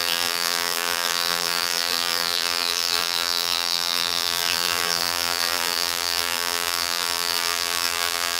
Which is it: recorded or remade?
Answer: remade